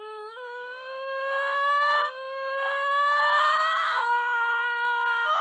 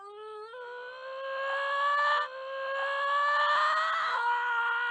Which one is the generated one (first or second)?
first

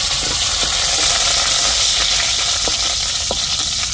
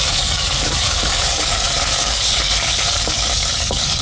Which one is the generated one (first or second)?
second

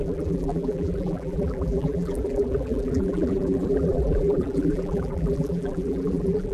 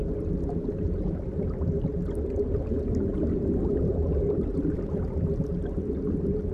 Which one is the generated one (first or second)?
first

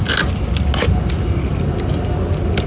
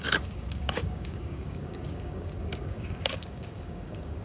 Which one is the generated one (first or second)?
second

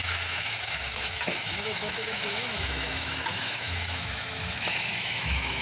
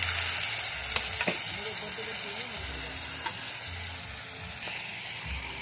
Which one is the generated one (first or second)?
first